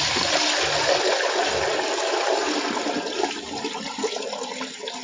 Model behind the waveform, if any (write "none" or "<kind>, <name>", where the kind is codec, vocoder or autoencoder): none